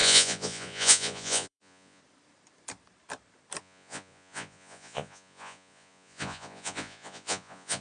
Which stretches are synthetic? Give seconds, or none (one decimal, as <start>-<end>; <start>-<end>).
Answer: 0.0-2.0; 3.6-7.8

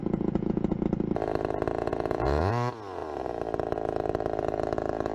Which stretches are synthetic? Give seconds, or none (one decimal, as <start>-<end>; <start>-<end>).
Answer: 0.0-0.8; 1.8-2.5

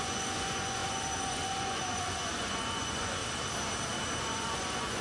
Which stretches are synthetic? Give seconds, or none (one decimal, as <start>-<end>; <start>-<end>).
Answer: 0.0-3.2; 4.2-5.0

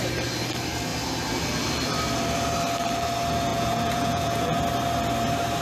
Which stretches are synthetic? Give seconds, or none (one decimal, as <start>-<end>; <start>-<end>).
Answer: 3.5-4.6

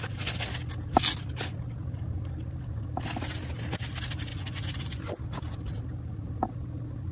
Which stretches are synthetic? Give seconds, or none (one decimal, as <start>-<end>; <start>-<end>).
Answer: 4.3-5.2

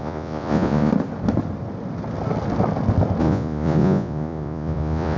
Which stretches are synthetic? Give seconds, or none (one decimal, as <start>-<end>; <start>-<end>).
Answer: 0.0-0.9; 3.2-5.2